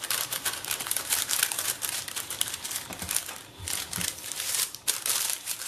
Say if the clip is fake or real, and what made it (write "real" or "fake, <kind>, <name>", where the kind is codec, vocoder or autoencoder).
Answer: fake, vocoder, BigVGAN v2